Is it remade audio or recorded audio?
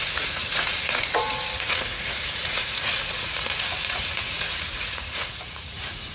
remade